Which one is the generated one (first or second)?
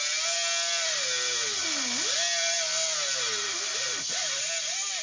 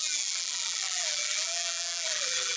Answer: second